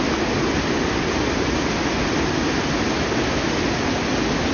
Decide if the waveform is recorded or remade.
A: recorded